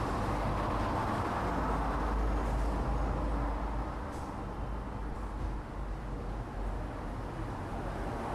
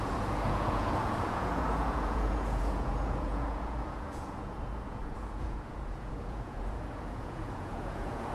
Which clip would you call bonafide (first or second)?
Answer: first